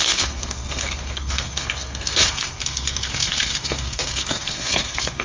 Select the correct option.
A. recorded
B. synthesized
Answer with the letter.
B